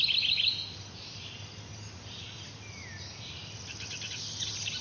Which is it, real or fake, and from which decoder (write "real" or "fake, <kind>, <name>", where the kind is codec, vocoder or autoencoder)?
real